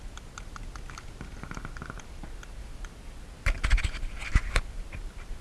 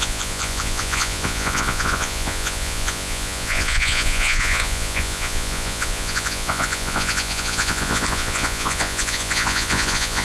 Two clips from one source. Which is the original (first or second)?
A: first